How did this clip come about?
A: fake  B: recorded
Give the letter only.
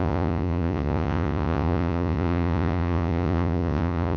A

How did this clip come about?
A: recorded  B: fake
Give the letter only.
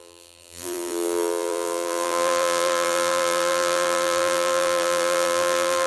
B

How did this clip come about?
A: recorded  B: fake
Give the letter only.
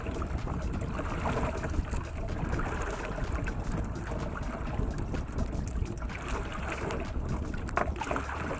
A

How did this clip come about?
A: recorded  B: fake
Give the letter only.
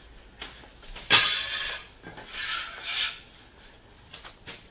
A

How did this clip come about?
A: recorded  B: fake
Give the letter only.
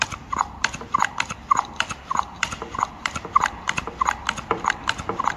B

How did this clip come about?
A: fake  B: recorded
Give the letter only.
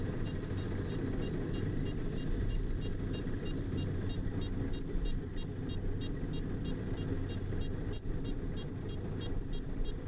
B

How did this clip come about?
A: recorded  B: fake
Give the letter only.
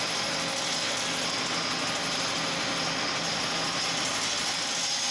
A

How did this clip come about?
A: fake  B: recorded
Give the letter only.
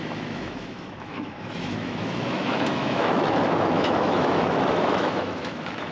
A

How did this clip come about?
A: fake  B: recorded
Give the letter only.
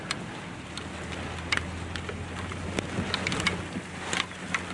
B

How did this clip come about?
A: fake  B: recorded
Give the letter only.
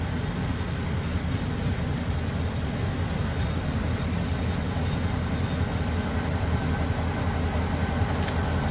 B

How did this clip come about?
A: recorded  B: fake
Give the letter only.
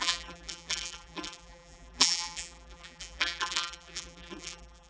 B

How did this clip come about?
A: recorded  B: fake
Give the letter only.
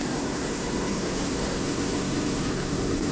B